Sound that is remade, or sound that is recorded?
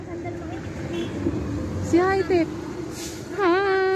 recorded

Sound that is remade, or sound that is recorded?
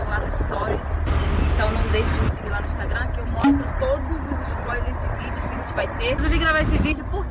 recorded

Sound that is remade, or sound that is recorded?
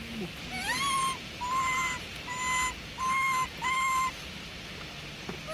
recorded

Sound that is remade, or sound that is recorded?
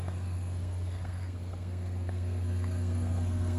remade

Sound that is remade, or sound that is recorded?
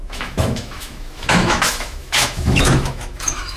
remade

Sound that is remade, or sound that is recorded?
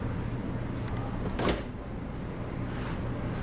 recorded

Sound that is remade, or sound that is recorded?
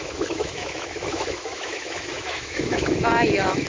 remade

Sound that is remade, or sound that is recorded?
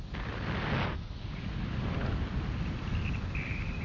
recorded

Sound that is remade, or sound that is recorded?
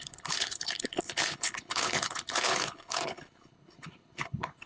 remade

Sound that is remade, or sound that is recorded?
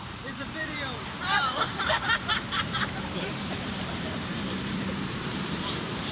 remade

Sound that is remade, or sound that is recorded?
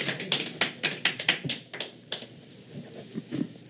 recorded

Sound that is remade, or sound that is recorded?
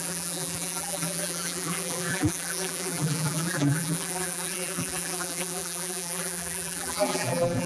remade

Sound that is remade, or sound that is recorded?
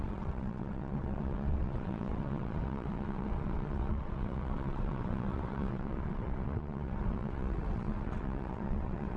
remade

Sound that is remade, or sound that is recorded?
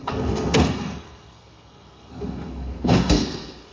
remade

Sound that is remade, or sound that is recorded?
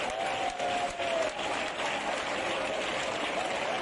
recorded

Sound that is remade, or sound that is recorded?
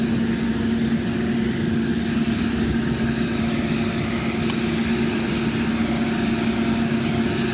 recorded